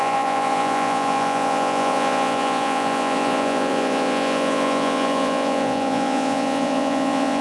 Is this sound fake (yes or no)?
yes